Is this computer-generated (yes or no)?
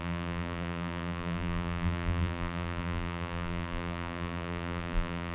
yes